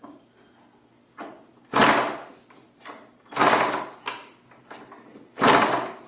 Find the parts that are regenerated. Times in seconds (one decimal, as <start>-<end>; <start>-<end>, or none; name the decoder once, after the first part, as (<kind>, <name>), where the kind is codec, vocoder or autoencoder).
none